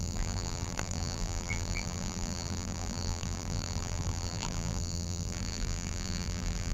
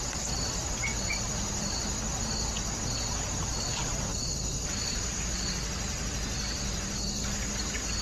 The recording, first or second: second